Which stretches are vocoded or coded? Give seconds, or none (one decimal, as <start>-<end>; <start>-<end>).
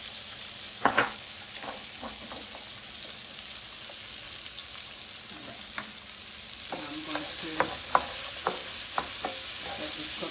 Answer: 0.8-2.3